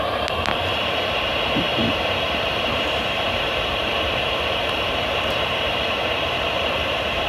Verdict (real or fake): fake